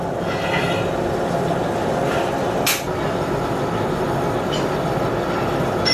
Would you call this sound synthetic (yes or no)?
no